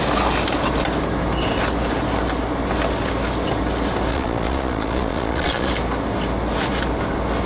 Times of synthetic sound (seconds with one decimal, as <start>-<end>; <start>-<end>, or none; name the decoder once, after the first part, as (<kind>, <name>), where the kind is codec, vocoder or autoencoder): 4.1-5.7 (vocoder, Vocos)